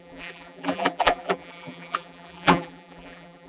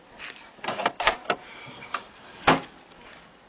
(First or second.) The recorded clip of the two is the second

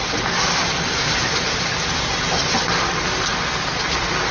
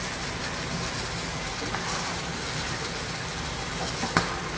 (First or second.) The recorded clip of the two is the second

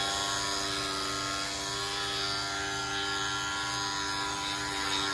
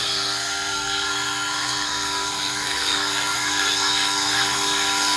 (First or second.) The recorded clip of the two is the first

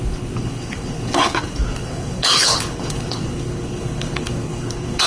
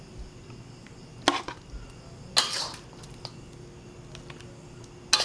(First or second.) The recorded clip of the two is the second